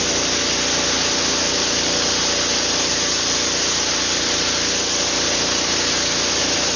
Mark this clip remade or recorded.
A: recorded